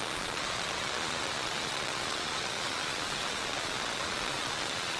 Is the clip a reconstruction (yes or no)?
yes